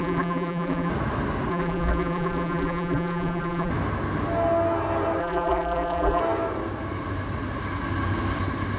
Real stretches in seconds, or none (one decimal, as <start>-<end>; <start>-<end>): 0.9-1.5; 3.7-5.2; 6.2-8.8